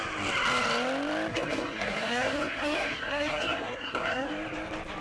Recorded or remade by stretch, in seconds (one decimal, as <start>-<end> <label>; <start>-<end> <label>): 0.0-1.3 recorded; 1.3-4.3 remade; 4.3-5.0 recorded